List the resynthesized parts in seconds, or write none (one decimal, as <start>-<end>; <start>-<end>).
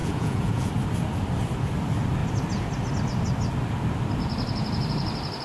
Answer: 0.0-0.7